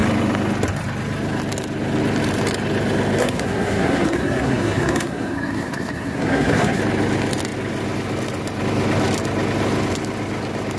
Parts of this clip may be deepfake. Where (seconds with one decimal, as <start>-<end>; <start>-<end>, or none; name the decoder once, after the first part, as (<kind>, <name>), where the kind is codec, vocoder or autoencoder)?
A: 3.2-6.8 (codec, SNAC)